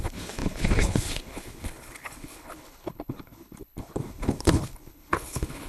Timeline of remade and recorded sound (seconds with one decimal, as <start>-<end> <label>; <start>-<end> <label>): 0.0-5.7 remade